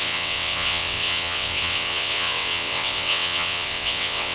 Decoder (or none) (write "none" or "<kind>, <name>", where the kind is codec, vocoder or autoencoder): vocoder, WaveNeXt